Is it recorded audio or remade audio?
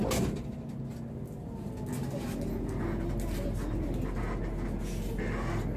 recorded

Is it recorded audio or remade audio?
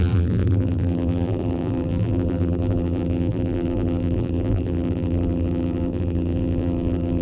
remade